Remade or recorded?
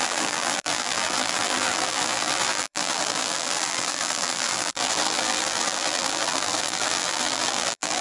remade